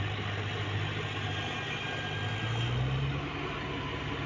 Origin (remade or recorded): recorded